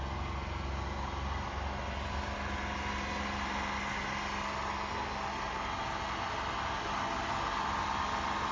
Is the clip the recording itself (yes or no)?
yes